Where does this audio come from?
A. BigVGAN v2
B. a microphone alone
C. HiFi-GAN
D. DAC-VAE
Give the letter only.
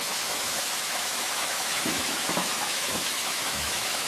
D